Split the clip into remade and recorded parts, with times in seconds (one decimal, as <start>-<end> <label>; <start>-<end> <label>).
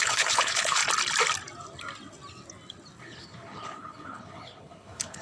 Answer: 0.0-0.8 remade; 0.8-3.0 recorded; 3.0-5.2 remade